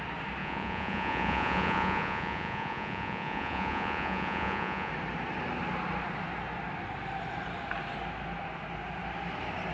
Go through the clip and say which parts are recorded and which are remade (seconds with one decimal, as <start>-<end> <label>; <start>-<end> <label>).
0.0-0.4 recorded; 0.4-4.9 remade; 4.9-9.7 recorded